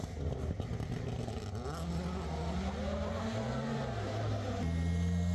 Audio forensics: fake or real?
real